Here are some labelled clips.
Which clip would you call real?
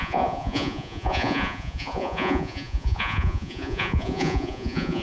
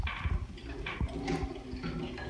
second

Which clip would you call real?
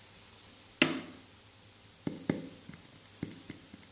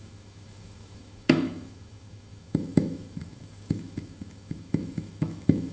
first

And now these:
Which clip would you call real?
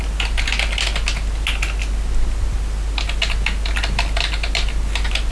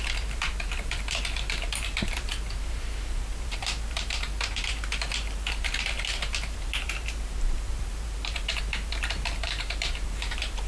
first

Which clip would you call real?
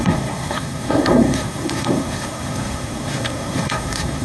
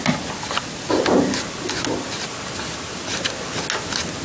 second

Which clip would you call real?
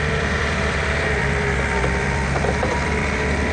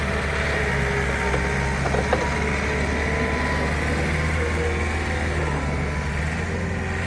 second